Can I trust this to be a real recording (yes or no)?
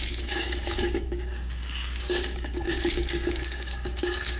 no